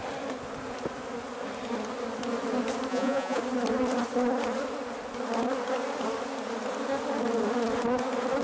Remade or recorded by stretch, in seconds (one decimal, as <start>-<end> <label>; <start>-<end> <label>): 0.0-2.9 recorded; 2.9-3.4 remade; 3.4-8.4 recorded